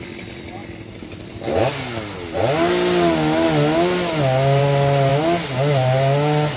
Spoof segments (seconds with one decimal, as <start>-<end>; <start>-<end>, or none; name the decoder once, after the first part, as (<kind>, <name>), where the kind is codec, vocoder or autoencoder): none